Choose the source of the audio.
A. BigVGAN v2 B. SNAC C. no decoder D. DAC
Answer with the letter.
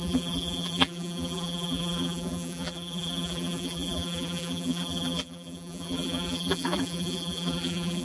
A